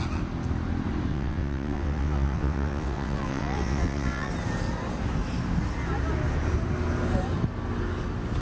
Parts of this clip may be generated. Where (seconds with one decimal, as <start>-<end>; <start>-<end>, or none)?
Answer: 1.1-4.3